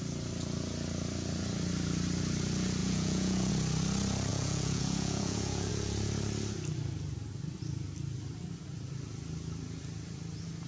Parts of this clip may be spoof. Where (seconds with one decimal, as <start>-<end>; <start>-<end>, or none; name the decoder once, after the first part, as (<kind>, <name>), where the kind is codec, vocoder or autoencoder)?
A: 2.8-3.5 (vocoder, Vocos); 4.3-5.7